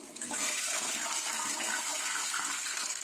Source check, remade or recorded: remade